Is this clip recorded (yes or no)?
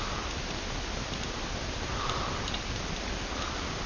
yes